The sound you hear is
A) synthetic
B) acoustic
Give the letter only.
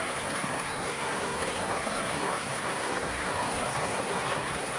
A